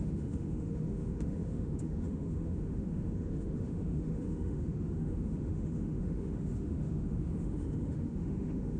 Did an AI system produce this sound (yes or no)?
yes